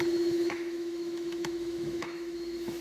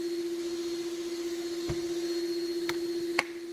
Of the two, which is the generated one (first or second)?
first